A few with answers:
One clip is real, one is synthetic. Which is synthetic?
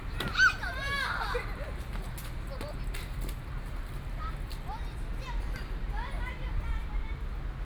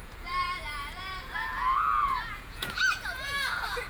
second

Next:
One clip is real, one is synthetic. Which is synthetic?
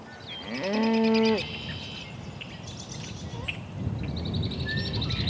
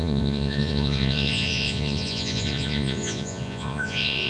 second